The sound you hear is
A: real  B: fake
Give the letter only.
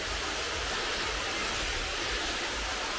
A